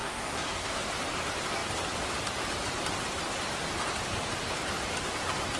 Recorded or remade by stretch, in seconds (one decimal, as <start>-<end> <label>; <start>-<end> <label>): 0.0-0.8 remade; 0.8-5.6 recorded